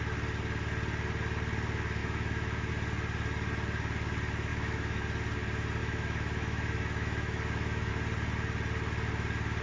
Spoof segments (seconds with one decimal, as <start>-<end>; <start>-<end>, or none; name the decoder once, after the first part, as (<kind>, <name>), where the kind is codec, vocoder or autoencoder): 2.0-2.7 (autoencoder, DAC-VAE); 4.5-5.0; 5.8-7.9